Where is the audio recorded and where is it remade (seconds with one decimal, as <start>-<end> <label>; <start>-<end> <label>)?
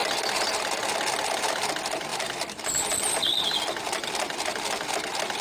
0.0-2.1 recorded; 2.1-4.9 remade; 4.9-5.4 recorded